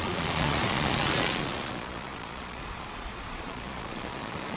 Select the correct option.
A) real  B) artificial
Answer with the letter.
B